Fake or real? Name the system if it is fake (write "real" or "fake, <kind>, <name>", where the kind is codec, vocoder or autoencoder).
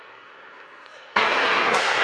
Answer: fake, codec, SNAC